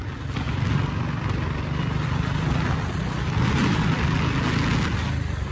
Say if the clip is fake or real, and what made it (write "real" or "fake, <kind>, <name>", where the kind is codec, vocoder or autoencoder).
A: real